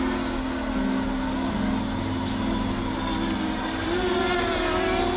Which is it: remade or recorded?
recorded